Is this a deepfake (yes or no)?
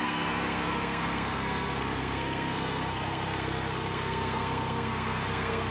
yes